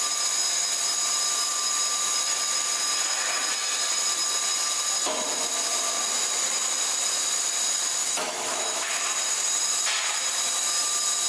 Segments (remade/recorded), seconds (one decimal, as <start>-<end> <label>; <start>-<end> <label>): 0.0-8.0 recorded; 8.0-8.9 remade; 8.9-11.3 recorded